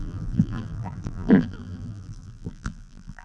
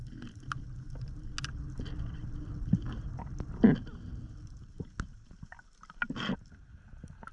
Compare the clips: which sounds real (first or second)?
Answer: second